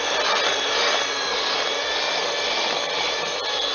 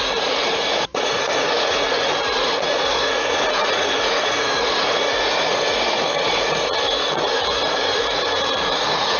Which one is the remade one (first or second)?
second